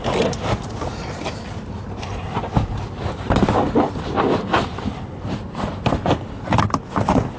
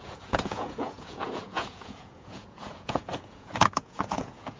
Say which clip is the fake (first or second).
second